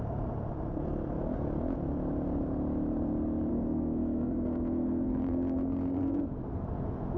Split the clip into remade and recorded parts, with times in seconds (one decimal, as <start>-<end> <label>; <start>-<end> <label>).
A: 0.0-3.5 recorded; 3.5-6.2 remade; 6.2-7.2 recorded